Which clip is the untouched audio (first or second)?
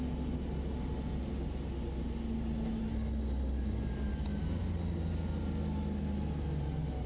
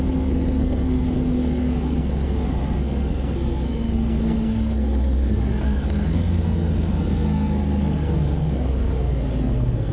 first